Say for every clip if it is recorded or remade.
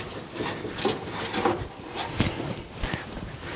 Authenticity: remade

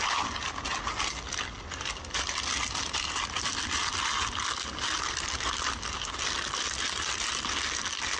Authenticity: recorded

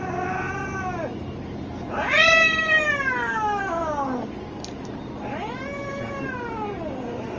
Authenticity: recorded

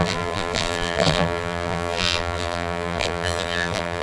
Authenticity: remade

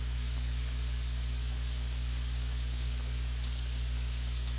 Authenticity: remade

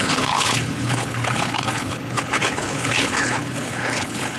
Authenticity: remade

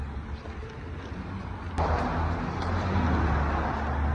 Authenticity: recorded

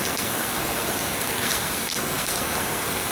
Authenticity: remade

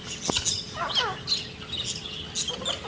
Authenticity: recorded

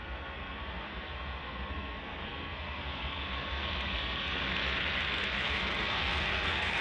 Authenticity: remade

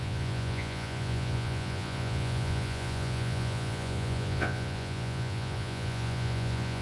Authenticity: remade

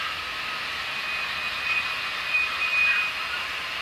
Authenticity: recorded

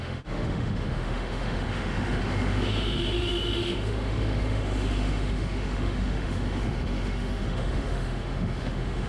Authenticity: remade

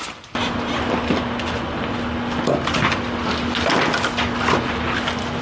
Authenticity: recorded